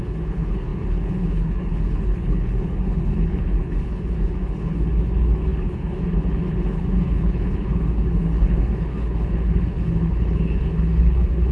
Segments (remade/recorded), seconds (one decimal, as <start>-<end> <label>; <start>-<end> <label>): 0.0-11.5 remade